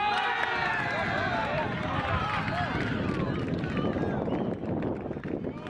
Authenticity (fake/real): real